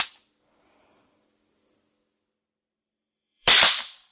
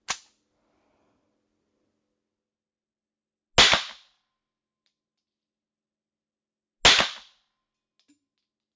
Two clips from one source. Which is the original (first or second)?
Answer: second